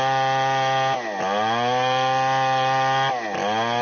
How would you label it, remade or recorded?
recorded